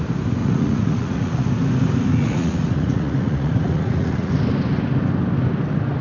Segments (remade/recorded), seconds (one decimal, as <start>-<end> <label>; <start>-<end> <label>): 0.0-0.4 recorded; 0.4-1.5 remade; 1.5-2.1 recorded; 2.1-4.3 remade; 4.3-6.0 recorded